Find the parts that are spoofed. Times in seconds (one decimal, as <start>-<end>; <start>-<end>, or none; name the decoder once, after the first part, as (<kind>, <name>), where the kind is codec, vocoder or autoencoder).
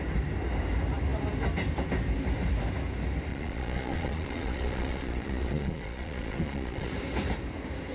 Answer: 3.3-6.9 (vocoder, Vocos)